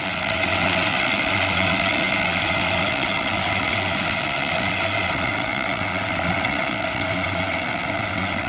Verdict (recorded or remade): remade